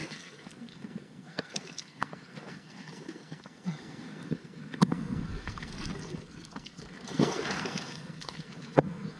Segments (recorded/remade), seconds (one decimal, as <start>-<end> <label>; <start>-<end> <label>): 0.0-9.2 remade